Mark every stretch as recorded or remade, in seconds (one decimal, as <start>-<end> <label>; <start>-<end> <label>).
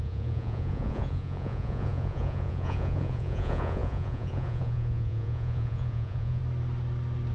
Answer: 0.0-6.4 remade; 6.4-7.3 recorded